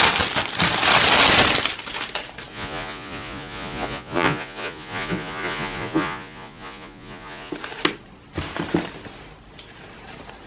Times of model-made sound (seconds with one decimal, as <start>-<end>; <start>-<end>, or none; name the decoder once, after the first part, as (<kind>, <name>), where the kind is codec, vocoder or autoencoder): 2.5-7.5 (vocoder, Vocos)